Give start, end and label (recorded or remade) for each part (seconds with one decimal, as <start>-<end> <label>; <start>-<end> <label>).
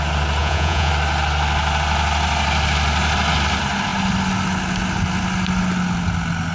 0.0-0.4 recorded; 0.4-0.9 remade; 0.9-6.5 recorded